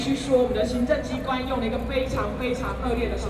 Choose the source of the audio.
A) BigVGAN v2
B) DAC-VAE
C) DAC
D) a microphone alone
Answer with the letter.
D